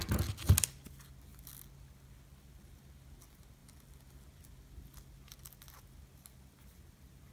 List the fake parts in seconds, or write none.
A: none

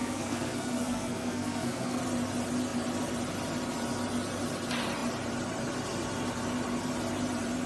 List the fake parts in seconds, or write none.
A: 0.0-2.0 (codec, SNAC)

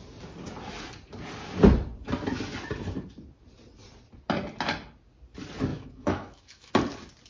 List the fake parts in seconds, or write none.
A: 5.7-6.7 (autoencoder, DAC-VAE)

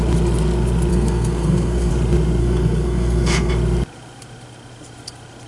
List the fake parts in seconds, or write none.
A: 0.9-1.9 (codec, SNAC); 2.4-3.5

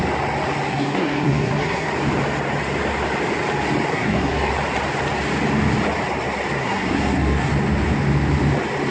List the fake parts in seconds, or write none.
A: 0.7-1.9 (codec, SNAC); 3.9-4.5; 6.6-7.5

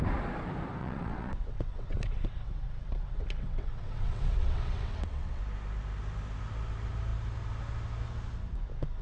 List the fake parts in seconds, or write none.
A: 0.8-5.4 (vocoder, WaveNeXt)

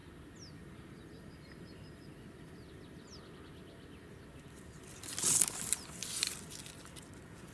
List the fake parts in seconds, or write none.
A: 6.0-6.9 (vocoder, BigVGAN v2)

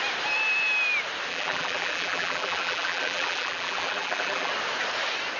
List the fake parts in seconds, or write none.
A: 1.3-4.5 (vocoder, BigVGAN v2)